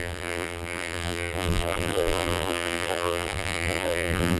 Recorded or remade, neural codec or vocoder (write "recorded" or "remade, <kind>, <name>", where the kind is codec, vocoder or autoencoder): remade, vocoder, BigVGAN v2